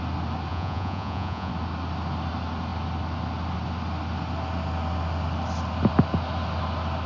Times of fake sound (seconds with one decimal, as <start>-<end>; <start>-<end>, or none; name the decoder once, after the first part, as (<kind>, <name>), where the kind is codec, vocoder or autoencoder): 0.5-1.5 (vocoder, Vocos)